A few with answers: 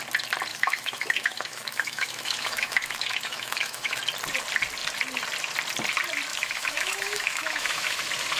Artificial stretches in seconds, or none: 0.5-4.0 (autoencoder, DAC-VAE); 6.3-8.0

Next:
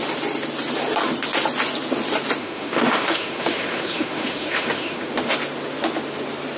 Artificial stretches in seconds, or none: 2.4-5.1 (autoencoder, DAC-VAE)

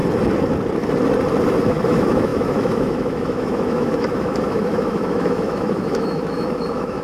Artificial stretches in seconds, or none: 1.6-7.0 (autoencoder, DAC-VAE)

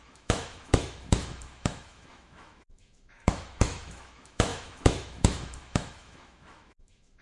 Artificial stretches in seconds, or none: 0.0-7.2 (autoencoder, DAC-VAE)

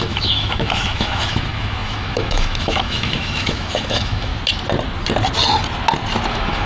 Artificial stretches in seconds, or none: 0.0-4.3 (autoencoder, DAC-VAE); 6.3-6.7

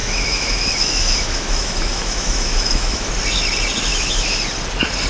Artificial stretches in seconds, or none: 0.0-3.1 (autoencoder, DAC-VAE); 3.9-4.4